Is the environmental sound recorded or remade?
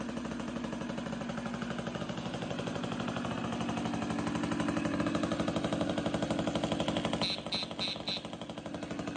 recorded